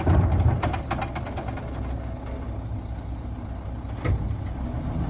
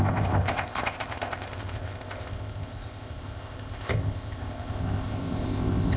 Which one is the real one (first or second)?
first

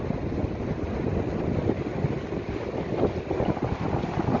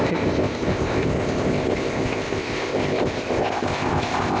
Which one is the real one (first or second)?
first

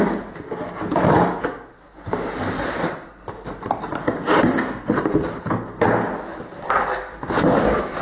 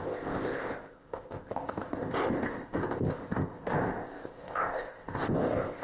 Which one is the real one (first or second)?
first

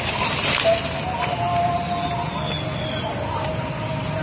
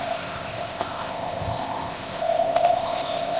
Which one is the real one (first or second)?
first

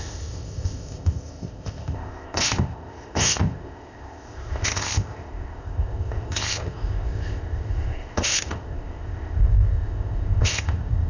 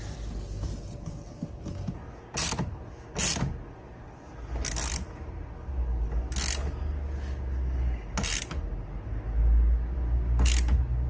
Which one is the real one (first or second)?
second